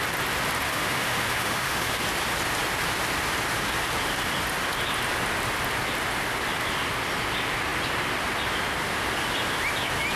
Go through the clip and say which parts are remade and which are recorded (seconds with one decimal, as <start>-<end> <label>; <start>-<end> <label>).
0.0-0.7 recorded; 0.7-2.0 remade; 2.0-10.2 recorded